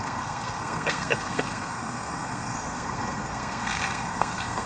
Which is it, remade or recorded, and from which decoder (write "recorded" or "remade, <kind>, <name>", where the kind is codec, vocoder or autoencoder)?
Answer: remade, codec, SNAC